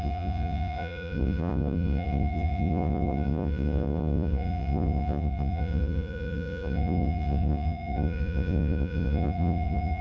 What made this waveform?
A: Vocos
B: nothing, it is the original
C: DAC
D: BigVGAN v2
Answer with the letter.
A